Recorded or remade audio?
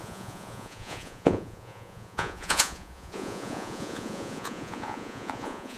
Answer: remade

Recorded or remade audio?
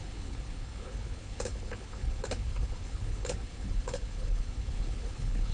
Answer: remade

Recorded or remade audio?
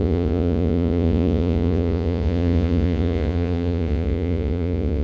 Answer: remade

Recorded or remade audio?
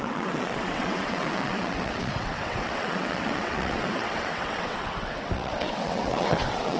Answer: remade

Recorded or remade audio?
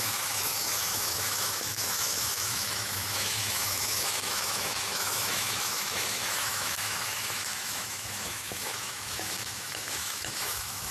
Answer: remade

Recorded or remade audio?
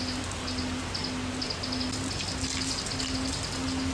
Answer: recorded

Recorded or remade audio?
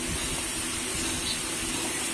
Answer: recorded